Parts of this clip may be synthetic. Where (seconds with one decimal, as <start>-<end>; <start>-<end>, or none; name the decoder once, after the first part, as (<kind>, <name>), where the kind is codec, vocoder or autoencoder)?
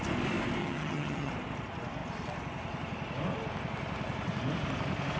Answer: 0.6-1.3 (vocoder, HiFi-GAN)